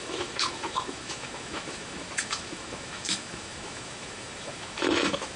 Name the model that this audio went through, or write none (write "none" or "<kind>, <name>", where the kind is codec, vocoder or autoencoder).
autoencoder, DAC-VAE